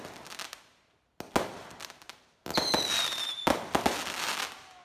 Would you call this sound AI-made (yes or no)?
no